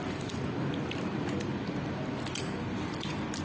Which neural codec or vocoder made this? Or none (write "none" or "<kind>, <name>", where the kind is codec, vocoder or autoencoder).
none